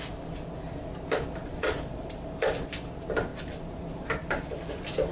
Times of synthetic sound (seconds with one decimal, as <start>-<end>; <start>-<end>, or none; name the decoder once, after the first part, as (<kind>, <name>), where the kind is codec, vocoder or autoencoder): 1.4-2.6 (vocoder, BigVGAN v2); 3.3-5.1